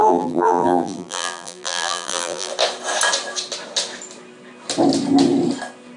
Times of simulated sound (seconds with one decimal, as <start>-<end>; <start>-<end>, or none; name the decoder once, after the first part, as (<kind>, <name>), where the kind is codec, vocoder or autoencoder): 0.0-2.5 (vocoder, BigVGAN v2)